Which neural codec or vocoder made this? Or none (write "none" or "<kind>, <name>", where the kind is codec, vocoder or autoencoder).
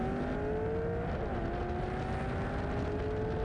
none